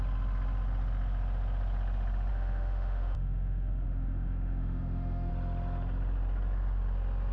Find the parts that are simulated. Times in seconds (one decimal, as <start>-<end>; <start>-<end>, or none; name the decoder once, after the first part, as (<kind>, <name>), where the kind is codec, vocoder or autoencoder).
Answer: 2.3-5.3 (autoencoder, DAC-VAE)